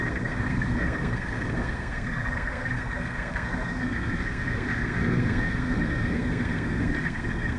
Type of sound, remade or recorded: remade